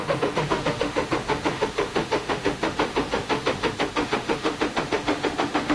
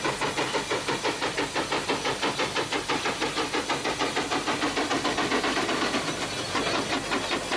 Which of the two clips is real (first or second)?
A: second